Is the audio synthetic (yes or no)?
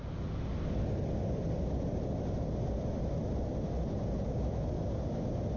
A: no